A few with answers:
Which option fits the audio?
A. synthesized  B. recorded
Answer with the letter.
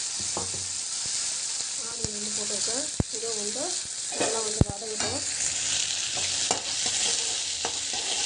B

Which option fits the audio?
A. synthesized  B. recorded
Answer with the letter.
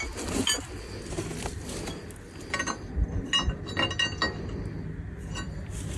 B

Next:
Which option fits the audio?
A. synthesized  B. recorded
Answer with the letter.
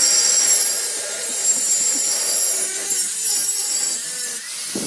B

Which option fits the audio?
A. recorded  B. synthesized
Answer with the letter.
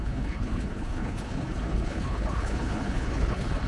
B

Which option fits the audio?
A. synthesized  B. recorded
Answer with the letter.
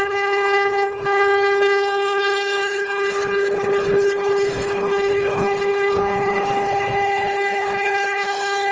A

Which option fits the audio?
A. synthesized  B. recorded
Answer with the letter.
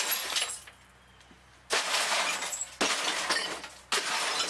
B